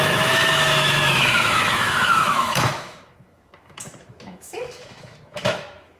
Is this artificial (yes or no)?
yes